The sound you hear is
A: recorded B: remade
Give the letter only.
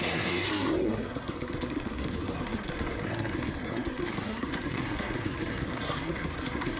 B